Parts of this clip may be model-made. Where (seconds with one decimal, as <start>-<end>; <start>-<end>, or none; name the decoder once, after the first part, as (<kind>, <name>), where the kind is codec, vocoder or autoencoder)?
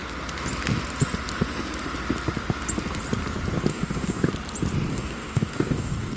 3.7-4.3 (codec, DAC); 4.9-6.2